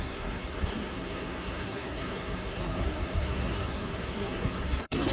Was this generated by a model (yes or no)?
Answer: yes